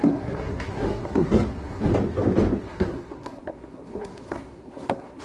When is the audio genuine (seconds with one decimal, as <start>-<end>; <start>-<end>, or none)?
1.9-2.6